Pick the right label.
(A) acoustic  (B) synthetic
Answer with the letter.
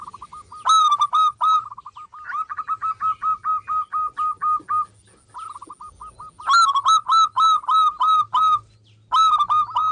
A